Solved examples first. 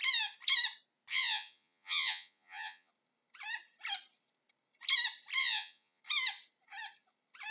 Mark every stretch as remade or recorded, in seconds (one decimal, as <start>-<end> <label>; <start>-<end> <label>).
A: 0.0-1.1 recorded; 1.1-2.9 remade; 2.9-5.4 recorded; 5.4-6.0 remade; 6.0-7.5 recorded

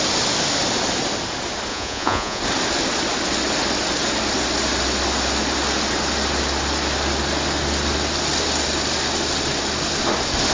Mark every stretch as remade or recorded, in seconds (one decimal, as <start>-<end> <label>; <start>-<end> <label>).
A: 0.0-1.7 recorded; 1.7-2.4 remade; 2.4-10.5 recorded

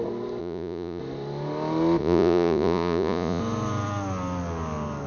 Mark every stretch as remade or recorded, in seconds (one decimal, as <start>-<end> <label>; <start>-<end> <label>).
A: 0.0-0.4 recorded; 0.4-1.0 remade; 1.0-2.0 recorded; 2.0-3.4 remade; 3.4-5.1 recorded

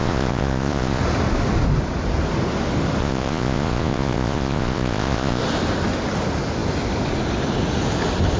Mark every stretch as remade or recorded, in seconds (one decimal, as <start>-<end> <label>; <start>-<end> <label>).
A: 0.0-1.0 remade; 1.0-3.0 recorded; 3.0-5.4 remade; 5.4-8.4 recorded

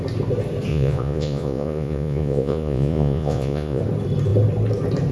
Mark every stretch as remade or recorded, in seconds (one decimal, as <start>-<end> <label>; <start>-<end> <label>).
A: 0.0-0.7 recorded; 0.7-3.8 remade; 3.8-5.1 recorded

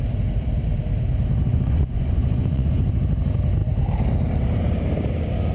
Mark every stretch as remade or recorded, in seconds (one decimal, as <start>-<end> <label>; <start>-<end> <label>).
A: 0.0-1.5 recorded; 1.5-2.7 remade; 2.7-5.5 recorded